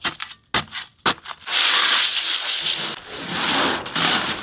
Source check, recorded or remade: recorded